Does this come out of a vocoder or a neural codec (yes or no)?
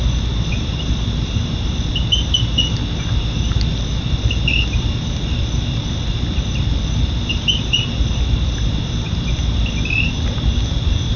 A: no